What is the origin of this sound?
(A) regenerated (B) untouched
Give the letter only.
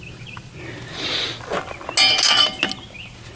B